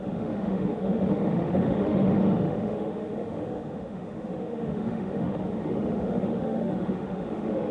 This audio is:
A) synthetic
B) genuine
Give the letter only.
A